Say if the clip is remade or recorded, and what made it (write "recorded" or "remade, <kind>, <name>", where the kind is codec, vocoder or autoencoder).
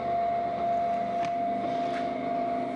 recorded